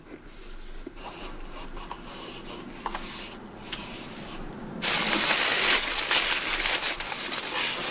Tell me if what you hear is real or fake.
real